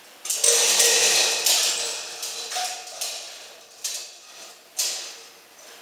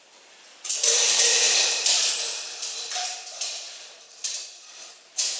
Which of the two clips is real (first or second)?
first